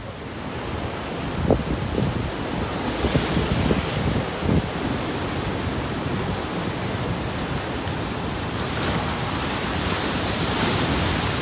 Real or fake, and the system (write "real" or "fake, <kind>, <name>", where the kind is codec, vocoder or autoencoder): real